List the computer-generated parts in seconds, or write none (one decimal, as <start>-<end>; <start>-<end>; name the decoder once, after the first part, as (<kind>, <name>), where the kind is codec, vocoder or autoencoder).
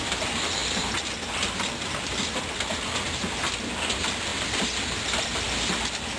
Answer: none